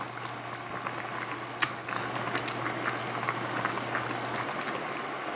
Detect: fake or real real